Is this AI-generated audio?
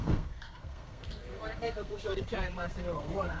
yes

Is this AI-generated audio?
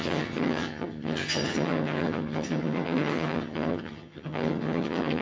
yes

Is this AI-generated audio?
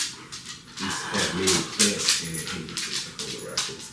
no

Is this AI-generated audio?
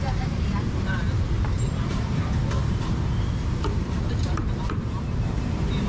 yes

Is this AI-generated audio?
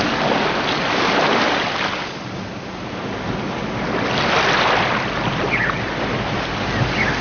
no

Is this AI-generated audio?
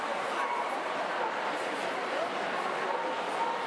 no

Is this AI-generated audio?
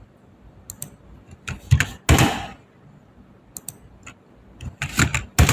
no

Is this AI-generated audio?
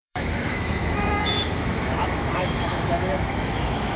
yes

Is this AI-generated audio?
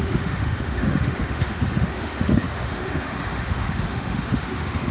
yes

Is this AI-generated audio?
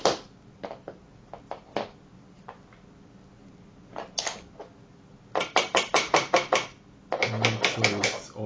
no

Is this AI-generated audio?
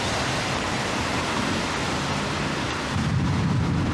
no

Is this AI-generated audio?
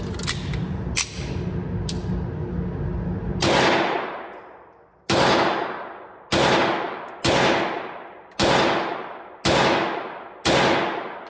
no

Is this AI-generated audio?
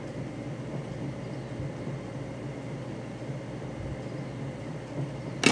no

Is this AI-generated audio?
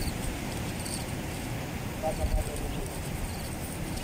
yes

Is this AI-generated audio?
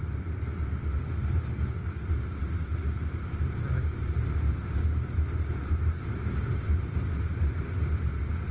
no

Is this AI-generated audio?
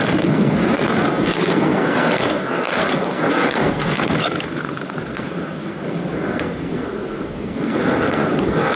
yes